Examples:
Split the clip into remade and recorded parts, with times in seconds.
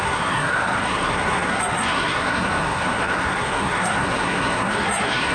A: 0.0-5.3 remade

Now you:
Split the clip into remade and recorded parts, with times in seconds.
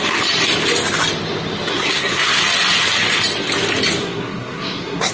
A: 0.0-1.7 recorded; 1.7-2.4 remade; 2.4-4.0 recorded; 4.0-5.1 remade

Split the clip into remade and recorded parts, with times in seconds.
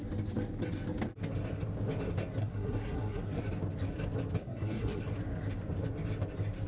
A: 0.0-2.4 recorded; 2.4-3.4 remade; 3.4-4.4 recorded; 4.4-5.0 remade; 5.0-6.7 recorded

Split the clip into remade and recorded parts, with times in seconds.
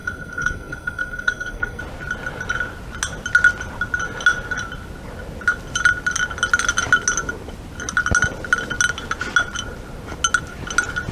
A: 0.0-1.8 remade; 1.8-11.1 recorded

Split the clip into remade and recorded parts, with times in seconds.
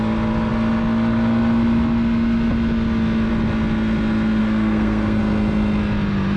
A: 0.0-4.4 recorded; 4.4-5.2 remade; 5.2-6.4 recorded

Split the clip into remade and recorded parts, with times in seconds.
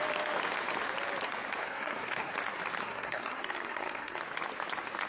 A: 0.0-1.6 recorded; 1.6-2.3 remade; 2.3-2.8 recorded; 2.8-4.2 remade; 4.2-5.1 recorded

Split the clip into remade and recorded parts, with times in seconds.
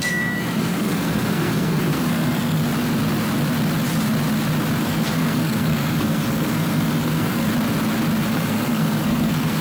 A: 0.0-2.6 remade; 2.6-4.8 recorded; 4.8-7.5 remade; 7.5-8.3 recorded; 8.3-9.6 remade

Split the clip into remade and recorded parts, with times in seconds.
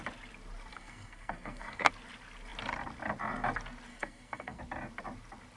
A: 0.0-0.7 recorded; 0.7-1.9 remade; 1.9-3.9 recorded; 3.9-4.6 remade; 4.6-5.6 recorded